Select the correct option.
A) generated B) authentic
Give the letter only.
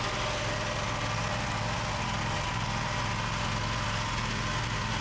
B